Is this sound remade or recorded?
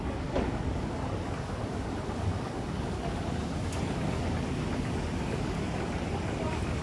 remade